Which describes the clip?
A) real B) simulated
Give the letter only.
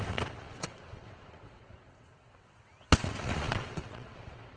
B